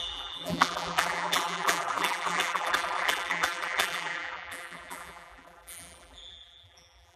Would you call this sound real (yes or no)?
no